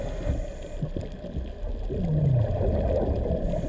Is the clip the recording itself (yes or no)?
yes